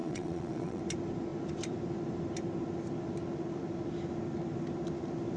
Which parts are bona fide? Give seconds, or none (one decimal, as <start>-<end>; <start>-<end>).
0.8-5.4